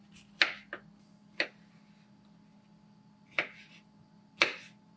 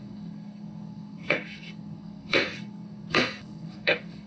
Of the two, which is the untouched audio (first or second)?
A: first